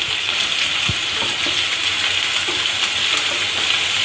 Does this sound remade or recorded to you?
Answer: recorded